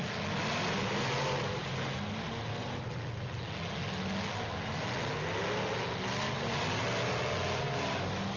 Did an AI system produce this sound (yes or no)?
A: no